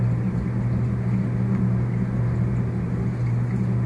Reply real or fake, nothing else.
real